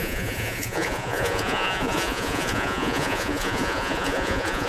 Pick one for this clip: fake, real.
fake